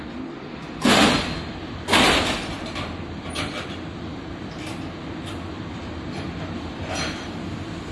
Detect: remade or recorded recorded